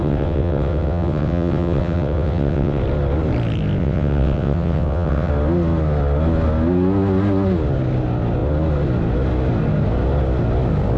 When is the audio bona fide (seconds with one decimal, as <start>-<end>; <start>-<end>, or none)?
2.8-3.8; 5.3-11.0